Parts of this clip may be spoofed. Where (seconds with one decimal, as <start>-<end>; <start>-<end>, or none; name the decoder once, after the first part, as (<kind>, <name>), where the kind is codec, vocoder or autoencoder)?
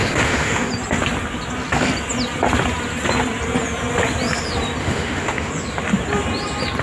0.0-0.7 (autoencoder, DAC-VAE); 4.8-5.5